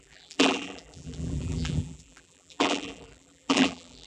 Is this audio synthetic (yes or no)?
yes